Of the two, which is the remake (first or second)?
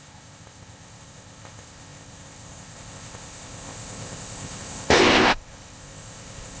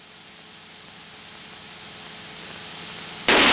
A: first